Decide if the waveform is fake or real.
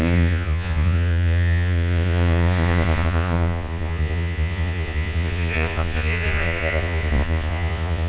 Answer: fake